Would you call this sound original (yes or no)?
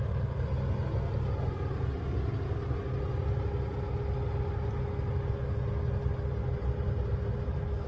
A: yes